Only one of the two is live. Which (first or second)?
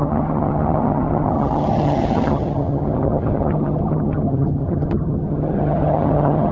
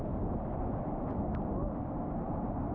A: second